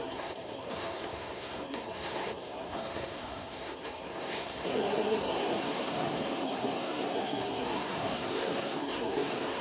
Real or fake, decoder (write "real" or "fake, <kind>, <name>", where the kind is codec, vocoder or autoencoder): fake, codec, SNAC